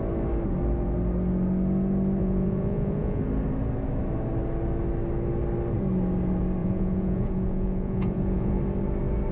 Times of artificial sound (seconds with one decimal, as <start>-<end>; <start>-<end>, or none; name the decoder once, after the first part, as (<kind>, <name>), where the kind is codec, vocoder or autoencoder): 2.2-3.2 (vocoder, Vocos); 6.6-8.6